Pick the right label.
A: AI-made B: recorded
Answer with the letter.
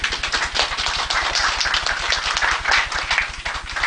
B